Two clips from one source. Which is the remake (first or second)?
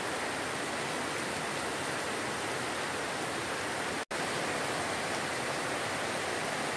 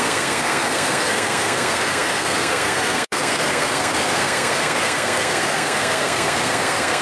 second